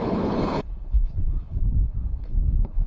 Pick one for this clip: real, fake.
fake